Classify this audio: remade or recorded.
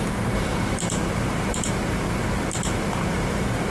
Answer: remade